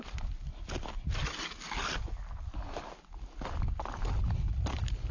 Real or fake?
real